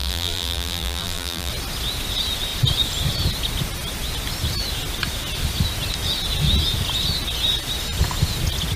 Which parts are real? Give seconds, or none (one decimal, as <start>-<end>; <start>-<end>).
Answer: 1.5-8.8